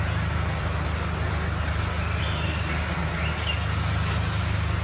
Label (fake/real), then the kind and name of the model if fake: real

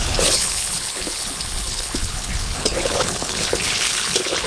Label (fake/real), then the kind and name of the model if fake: fake, codec, HILCodec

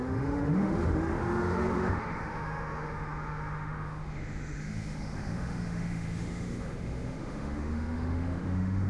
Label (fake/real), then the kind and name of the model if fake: fake, autoencoder, DAC-VAE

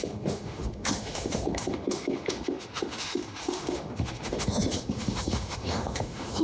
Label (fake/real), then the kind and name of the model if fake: fake, autoencoder, DAC-VAE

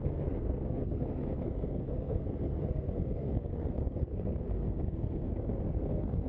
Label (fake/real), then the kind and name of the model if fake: fake, codec, SNAC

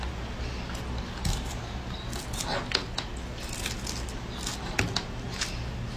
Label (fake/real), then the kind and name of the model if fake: real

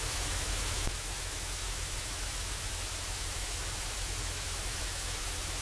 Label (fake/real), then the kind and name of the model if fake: fake, autoencoder, DAC-VAE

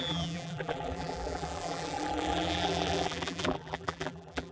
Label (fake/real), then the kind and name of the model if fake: fake, vocoder, BigVGAN v2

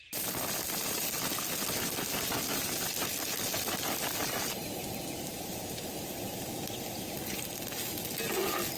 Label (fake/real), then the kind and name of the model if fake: real